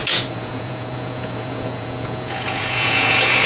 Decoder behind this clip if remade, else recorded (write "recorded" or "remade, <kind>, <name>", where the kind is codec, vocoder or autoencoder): remade, vocoder, Vocos